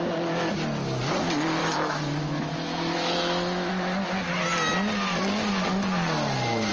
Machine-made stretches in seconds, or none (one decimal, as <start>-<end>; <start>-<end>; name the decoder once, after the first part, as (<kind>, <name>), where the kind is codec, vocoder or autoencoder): 1.6-3.7 (autoencoder, DAC-VAE)